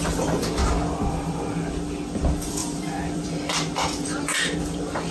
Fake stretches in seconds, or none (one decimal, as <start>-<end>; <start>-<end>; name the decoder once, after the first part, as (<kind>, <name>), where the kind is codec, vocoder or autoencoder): 0.0-0.6 (vocoder, BigVGAN v2); 1.1-5.1